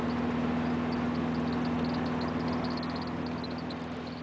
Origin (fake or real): real